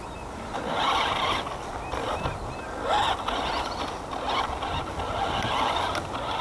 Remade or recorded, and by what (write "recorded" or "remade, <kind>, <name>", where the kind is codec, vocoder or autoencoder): recorded